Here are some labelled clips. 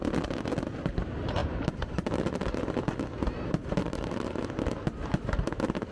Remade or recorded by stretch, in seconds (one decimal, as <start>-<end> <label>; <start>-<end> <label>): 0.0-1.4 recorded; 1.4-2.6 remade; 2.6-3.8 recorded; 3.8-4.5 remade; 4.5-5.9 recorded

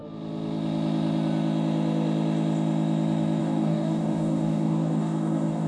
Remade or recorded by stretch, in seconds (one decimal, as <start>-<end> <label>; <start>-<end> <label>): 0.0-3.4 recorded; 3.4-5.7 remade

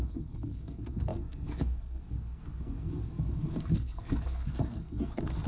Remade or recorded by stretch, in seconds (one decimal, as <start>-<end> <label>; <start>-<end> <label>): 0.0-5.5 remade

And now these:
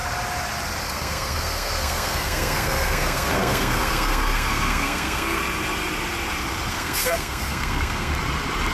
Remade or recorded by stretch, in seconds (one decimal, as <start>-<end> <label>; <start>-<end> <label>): 0.0-0.8 recorded; 0.8-5.4 remade; 5.4-6.7 recorded; 6.7-8.1 remade; 8.1-8.7 recorded